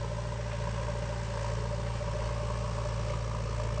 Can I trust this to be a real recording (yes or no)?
yes